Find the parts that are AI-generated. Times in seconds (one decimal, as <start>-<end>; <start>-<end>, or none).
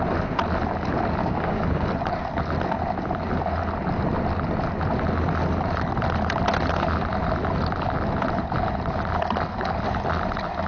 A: 1.2-1.9